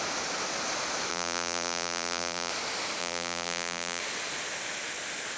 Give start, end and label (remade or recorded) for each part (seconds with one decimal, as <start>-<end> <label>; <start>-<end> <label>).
0.0-1.1 recorded; 1.1-2.5 remade; 2.5-3.0 recorded; 3.0-4.0 remade; 4.0-5.4 recorded